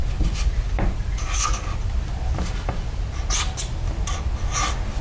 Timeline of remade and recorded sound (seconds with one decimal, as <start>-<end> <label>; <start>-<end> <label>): 0.0-3.0 remade; 3.0-5.0 recorded